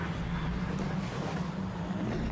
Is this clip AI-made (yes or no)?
no